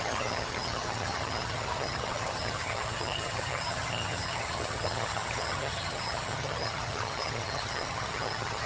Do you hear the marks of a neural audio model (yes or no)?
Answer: yes